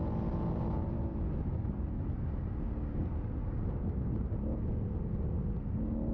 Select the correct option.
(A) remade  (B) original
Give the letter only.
B